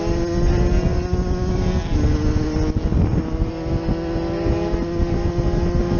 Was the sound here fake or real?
real